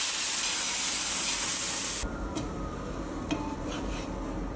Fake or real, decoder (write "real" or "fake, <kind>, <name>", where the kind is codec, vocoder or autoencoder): real